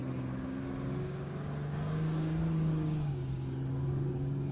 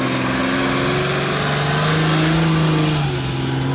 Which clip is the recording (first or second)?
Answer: second